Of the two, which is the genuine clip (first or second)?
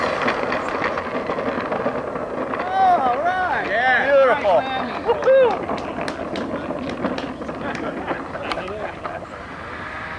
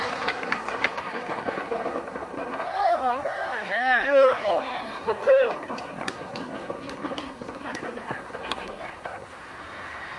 first